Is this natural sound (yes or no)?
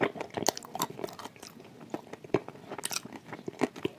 yes